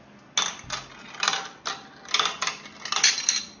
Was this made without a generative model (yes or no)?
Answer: yes